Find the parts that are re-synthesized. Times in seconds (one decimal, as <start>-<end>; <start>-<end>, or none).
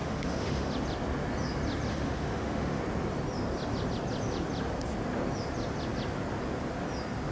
0.0-0.7; 1.9-2.8